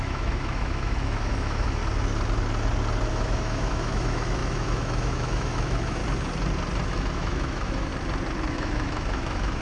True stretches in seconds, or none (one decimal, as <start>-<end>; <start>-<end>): 1.8-3.1; 6.0-6.9; 7.9-8.5